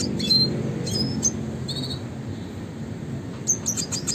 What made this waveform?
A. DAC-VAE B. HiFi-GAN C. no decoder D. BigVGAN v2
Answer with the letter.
C